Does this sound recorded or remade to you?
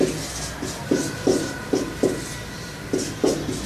recorded